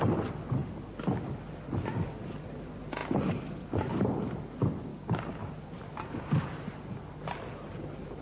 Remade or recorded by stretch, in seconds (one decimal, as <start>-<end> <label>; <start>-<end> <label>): 0.0-4.9 recorded; 4.9-5.5 remade; 5.5-8.2 recorded

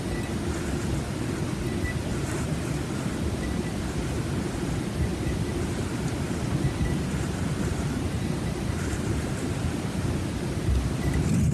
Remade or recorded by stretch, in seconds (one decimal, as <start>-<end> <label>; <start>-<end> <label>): 0.0-11.5 recorded

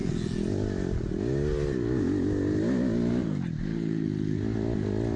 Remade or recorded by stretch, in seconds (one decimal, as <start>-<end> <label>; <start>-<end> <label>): 0.0-3.7 recorded; 3.7-4.4 remade; 4.4-5.2 recorded

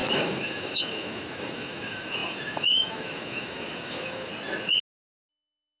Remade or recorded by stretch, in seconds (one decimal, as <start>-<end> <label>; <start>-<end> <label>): 0.0-4.3 remade; 4.3-5.3 recorded; 5.3-5.8 remade